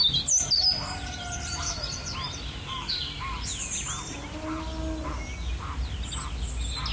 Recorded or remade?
recorded